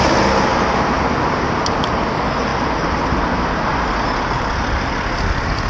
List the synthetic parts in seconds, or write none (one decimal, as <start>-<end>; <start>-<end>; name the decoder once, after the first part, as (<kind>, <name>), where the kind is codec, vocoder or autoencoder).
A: none